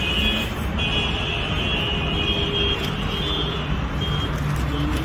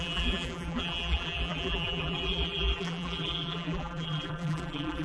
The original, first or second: first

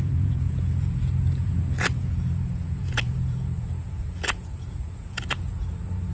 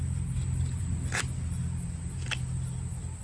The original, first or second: second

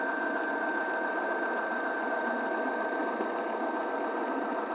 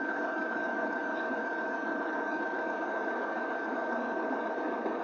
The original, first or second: first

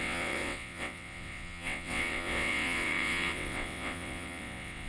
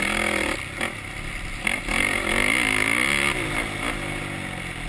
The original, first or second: second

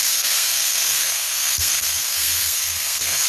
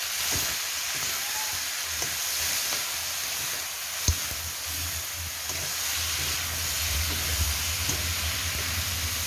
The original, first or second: second